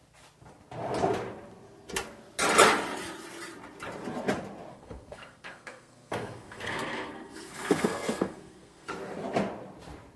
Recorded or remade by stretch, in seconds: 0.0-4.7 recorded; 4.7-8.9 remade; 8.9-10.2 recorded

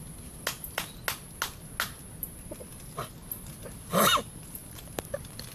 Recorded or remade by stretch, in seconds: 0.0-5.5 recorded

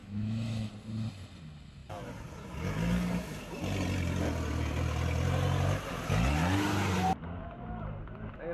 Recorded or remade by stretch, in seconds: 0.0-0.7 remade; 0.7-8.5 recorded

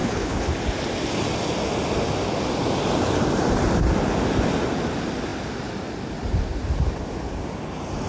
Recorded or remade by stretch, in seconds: 0.0-0.5 remade; 0.5-8.1 recorded